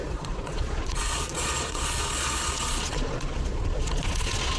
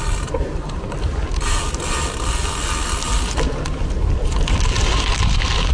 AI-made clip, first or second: first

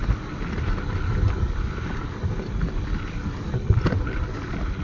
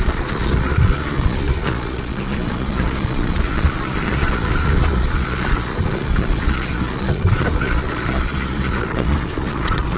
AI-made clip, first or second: second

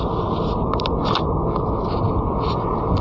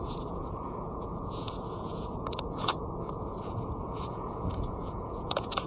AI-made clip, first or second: second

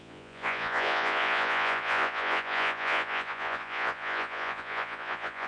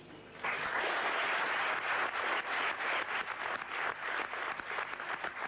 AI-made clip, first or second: first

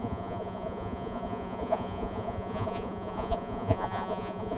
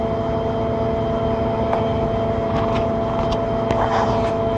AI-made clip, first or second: first